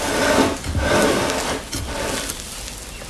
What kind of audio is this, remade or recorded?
recorded